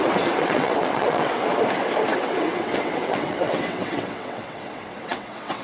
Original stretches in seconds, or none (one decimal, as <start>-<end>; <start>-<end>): 1.5-2.2